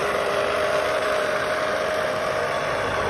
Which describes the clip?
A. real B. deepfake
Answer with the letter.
B